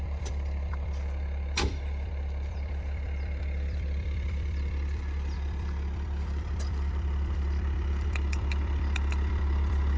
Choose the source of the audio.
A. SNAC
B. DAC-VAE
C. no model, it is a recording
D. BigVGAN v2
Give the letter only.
D